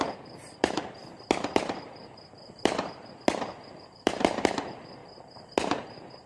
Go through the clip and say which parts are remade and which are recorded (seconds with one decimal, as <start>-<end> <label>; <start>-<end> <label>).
0.0-5.0 remade; 5.0-6.3 recorded